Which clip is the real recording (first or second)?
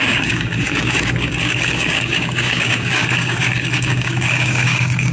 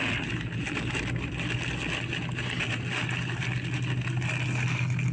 second